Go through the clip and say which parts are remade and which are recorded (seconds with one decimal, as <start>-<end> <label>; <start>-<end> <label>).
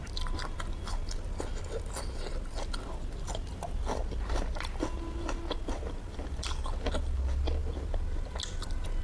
0.0-9.0 recorded